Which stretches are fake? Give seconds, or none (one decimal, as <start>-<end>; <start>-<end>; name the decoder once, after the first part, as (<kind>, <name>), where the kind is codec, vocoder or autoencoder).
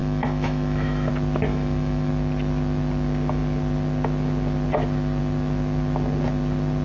0.0-1.1 (autoencoder, DAC-VAE); 1.5-2.1